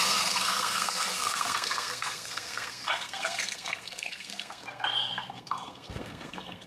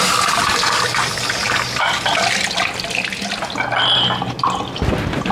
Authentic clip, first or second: second